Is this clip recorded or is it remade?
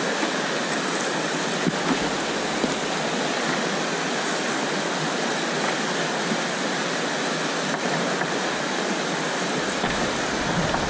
recorded